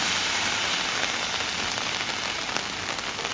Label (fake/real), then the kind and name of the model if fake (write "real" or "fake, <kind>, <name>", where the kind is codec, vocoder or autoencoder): real